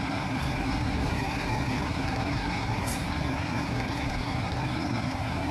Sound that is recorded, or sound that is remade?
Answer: remade